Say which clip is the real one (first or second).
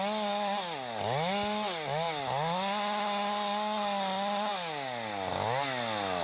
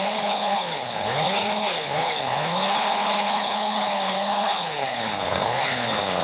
first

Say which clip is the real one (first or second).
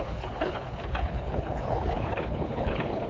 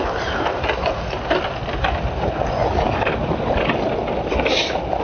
second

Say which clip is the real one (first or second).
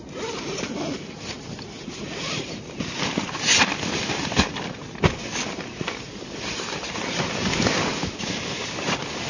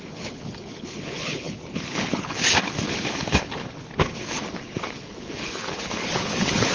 first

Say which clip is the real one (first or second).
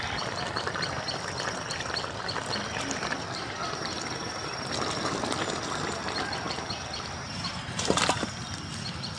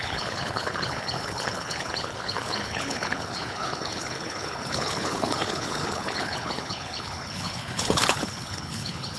first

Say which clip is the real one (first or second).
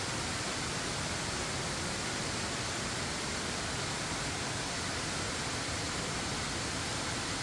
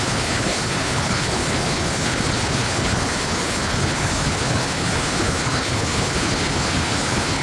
first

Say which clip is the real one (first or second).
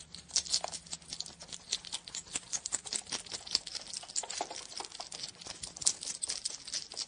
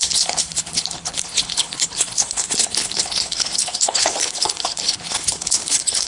first